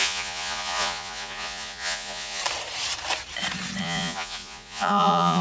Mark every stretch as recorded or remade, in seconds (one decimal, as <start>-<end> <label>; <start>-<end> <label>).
0.0-2.4 remade; 2.4-3.8 recorded; 3.8-5.4 remade

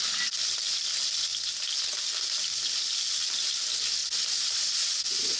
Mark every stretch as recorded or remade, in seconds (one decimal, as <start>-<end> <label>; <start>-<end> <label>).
0.0-5.4 recorded

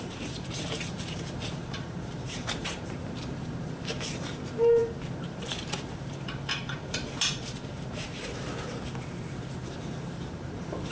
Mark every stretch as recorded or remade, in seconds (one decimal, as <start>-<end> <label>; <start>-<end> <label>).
0.0-10.9 remade